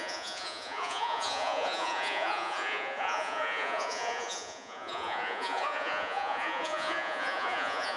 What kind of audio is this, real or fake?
fake